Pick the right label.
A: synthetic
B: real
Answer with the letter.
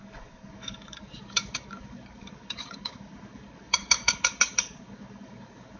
A